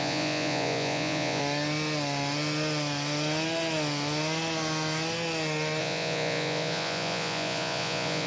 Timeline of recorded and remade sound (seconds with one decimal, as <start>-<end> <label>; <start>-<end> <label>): 0.0-1.4 remade; 1.4-5.8 recorded; 5.8-8.3 remade

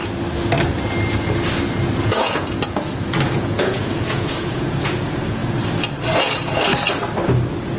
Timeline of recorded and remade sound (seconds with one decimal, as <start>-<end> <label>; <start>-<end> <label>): 0.0-2.0 recorded; 2.0-5.4 remade; 5.4-6.2 recorded; 6.2-6.7 remade; 6.7-7.8 recorded